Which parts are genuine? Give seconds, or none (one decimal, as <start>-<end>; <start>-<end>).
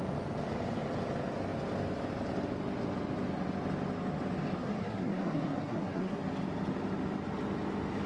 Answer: 0.0-4.6; 6.2-8.1